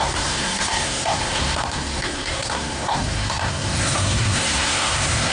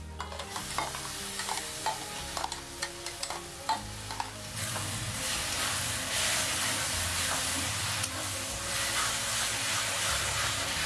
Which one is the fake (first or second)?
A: first